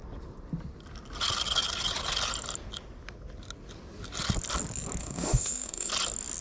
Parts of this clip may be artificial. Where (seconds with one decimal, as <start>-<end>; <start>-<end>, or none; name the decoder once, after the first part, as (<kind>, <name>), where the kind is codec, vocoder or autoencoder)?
5.0-5.9 (autoencoder, DAC-VAE)